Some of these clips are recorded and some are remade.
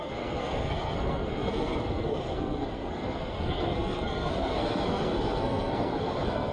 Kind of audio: remade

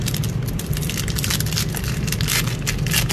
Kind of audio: recorded